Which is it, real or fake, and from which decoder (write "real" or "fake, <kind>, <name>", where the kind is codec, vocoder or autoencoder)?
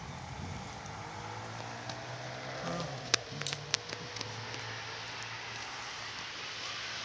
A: real